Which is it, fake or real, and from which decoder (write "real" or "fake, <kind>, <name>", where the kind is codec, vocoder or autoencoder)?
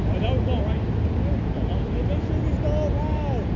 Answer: real